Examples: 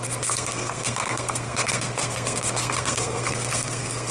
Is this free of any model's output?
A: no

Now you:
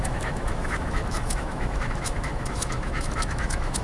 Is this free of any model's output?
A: no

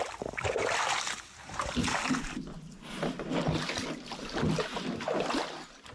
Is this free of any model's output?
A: yes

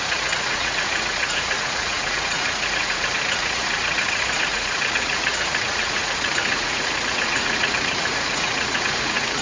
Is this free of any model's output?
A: no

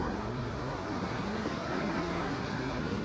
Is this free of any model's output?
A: no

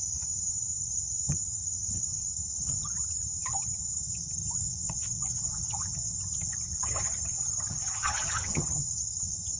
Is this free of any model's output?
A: no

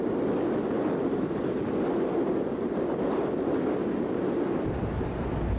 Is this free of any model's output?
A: yes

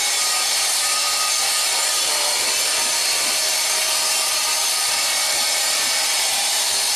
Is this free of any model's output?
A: no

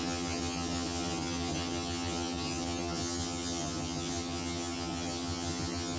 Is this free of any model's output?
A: no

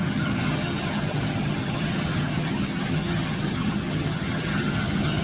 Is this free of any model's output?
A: no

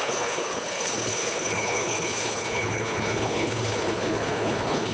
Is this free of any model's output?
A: no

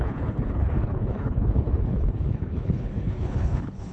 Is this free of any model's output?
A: no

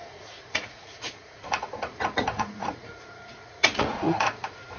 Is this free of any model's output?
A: no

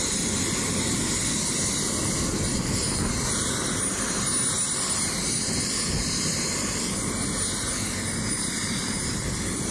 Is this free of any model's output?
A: yes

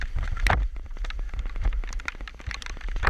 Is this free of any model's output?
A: no